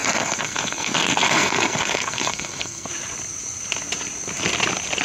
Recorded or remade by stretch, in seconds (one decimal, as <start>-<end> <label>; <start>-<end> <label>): 0.0-2.9 remade; 2.9-5.0 recorded